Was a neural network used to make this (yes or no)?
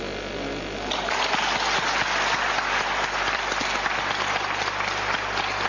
no